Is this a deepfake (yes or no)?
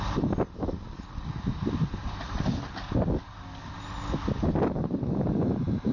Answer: no